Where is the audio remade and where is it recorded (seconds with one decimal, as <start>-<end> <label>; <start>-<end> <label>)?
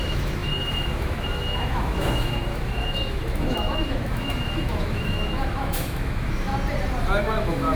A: 0.0-6.5 remade; 6.5-7.2 recorded; 7.2-7.8 remade